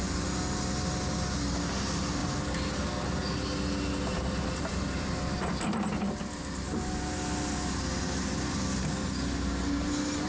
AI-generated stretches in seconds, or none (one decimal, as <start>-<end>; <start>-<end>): none